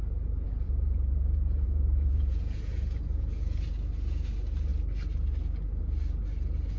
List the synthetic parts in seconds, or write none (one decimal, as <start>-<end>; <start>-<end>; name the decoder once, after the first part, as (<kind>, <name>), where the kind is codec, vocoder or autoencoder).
0.0-3.6 (vocoder, Vocos)